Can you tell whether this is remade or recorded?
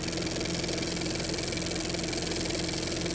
recorded